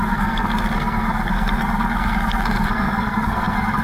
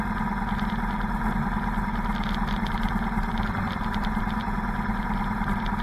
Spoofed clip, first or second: first